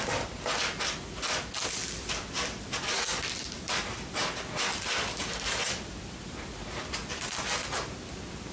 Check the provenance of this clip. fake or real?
real